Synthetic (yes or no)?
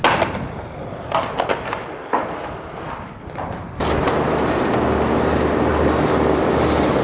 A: no